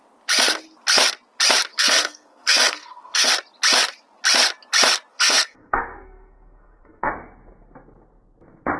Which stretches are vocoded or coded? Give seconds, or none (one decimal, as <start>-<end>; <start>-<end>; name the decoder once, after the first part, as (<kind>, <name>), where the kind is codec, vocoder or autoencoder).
1.7-3.3 (codec, SNAC); 5.1-7.1